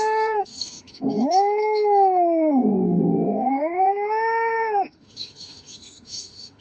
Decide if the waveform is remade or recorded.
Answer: remade